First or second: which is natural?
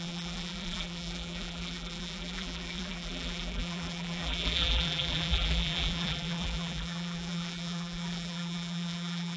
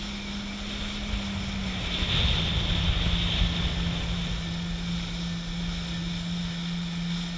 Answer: second